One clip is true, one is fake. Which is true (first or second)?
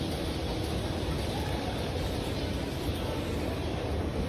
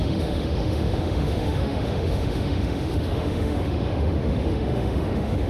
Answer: first